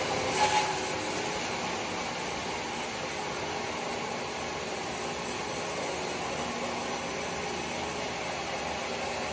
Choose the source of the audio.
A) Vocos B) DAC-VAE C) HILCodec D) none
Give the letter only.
D